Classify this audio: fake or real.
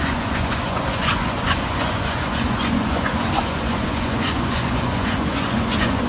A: fake